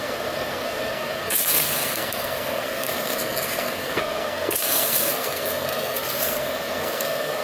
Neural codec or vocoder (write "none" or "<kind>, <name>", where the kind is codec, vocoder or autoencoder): codec, SNAC